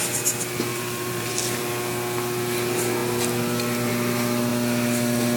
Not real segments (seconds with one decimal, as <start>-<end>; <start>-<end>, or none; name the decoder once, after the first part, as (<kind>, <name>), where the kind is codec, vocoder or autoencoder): 0.7-1.7 (vocoder, BigVGAN v2)